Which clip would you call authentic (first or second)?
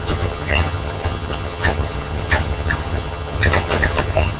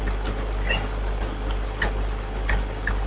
second